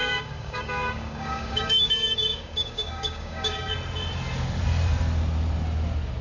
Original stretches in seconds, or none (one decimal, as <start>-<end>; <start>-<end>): 3.7-6.2